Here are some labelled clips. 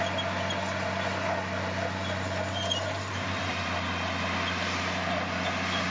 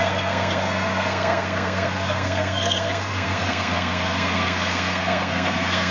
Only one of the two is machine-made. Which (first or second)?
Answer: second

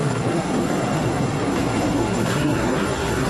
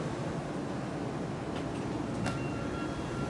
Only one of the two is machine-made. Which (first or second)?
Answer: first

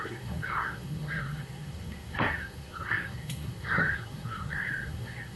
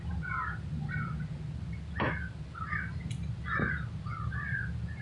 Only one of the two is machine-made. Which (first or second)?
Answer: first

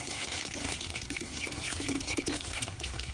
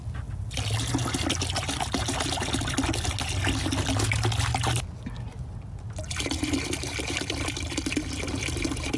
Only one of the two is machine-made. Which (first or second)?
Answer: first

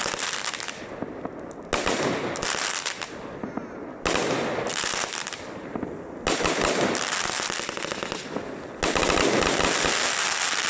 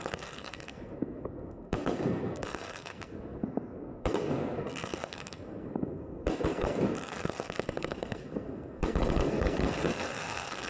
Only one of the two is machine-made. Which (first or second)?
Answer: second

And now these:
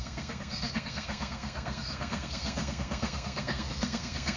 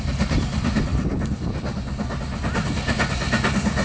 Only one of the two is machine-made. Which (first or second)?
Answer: first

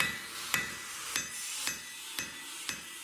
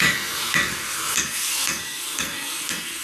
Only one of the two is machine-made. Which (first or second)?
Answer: second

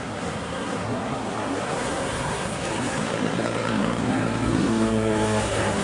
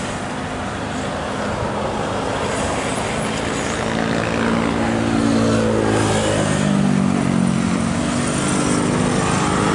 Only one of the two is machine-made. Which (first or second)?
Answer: first